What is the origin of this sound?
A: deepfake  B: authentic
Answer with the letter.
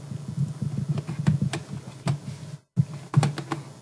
B